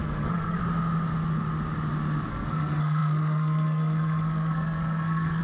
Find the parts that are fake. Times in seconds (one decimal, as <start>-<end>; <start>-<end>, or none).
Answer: 0.0-0.6; 2.3-5.4